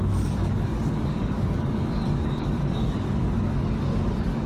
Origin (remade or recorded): remade